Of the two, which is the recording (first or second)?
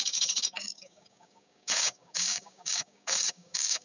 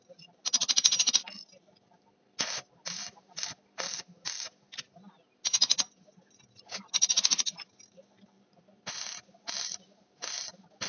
second